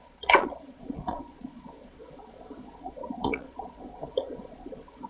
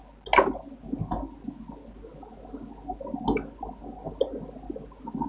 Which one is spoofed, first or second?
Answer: first